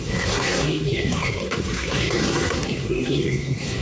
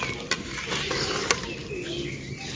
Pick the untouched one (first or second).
second